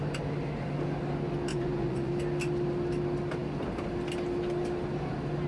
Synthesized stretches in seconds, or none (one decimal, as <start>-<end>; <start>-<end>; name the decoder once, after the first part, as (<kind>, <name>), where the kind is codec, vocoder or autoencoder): 1.5-2.1 (vocoder, Vocos)